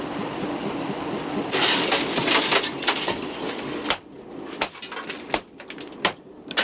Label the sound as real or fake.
real